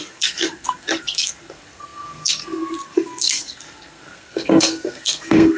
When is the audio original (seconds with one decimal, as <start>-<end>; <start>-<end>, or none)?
none

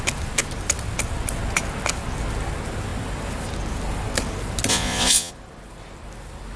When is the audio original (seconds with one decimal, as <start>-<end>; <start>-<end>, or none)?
0.0-4.7; 5.3-6.6

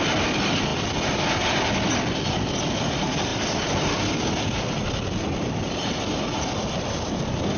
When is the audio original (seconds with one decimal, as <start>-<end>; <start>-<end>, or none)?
0.0-7.6

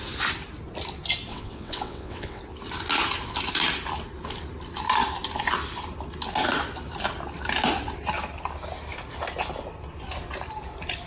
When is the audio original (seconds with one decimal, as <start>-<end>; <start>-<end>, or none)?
0.0-1.3; 2.4-11.1

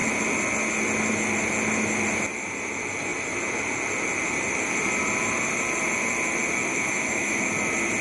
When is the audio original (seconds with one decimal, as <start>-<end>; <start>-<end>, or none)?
0.0-6.7; 7.5-8.0

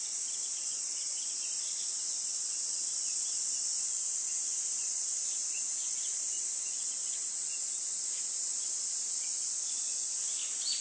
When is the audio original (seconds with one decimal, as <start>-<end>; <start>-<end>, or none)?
0.0-0.4; 1.2-10.8

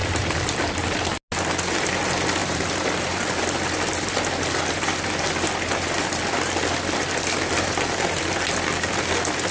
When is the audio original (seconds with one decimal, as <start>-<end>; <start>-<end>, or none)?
0.0-2.4; 3.4-9.5